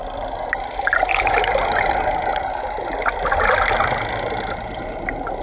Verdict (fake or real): real